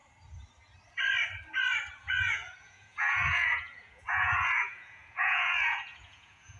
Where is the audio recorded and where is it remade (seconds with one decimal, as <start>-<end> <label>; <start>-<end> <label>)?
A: 0.0-1.9 recorded; 1.9-6.6 remade